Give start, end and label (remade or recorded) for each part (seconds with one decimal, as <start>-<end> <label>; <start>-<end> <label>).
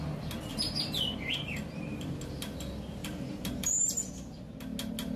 0.0-0.5 recorded; 0.5-2.2 remade; 2.2-3.0 recorded; 3.0-4.1 remade; 4.1-5.2 recorded